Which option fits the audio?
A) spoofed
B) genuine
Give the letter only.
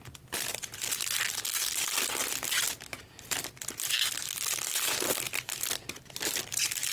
B